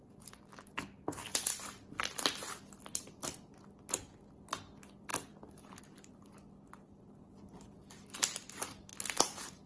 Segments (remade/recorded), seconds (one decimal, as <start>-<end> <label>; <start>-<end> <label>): 0.0-1.2 recorded; 1.2-3.0 remade; 3.0-5.1 recorded; 5.1-5.8 remade; 5.8-8.9 recorded; 8.9-9.7 remade